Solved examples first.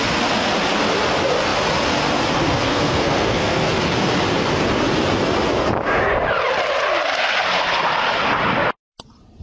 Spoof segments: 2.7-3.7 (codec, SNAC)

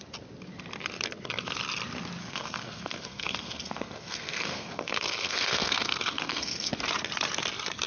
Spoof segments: 2.2-6.7 (codec, SNAC)